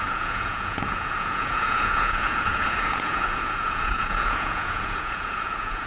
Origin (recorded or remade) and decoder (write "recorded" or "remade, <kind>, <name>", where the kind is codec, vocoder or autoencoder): remade, vocoder, Vocos